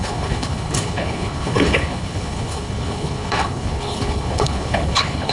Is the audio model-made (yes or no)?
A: yes